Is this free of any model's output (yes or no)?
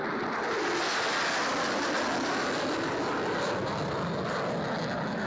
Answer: yes